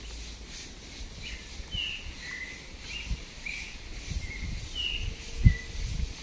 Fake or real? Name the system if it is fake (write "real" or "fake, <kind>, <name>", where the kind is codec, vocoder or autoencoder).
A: real